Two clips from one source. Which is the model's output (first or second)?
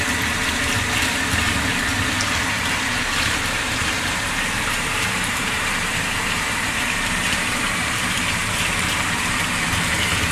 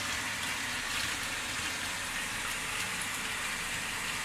first